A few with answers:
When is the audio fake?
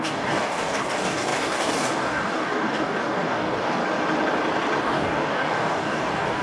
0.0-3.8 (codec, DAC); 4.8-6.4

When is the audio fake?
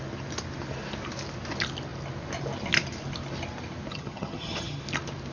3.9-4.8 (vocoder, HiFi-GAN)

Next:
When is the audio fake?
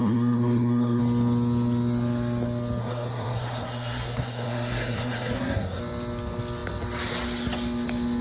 0.0-1.0 (codec, SNAC); 2.8-5.8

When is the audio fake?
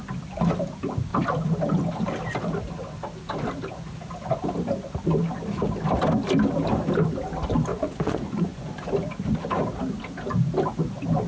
7.7-8.9 (vocoder, Vocos)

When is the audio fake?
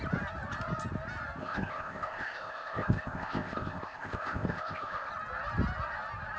1.4-5.1 (codec, ZipCodec)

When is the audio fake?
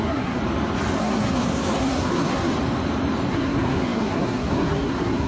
0.0-0.4 (codec, SNAC); 1.0-2.5; 3.3-5.3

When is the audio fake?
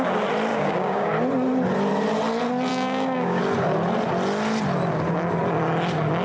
0.5-1.1 (codec, DAC); 2.7-3.4